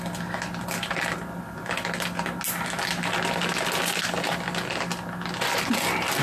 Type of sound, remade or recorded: recorded